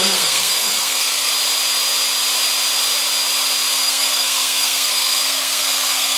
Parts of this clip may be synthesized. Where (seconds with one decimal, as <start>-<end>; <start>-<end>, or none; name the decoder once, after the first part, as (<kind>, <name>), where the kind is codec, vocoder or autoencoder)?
0.0-1.3 (codec, SNAC); 3.7-6.2